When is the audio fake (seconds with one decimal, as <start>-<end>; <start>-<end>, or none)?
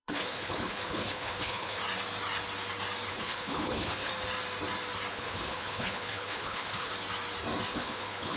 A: 0.0-1.8; 3.1-4.1; 5.1-6.9; 7.7-8.4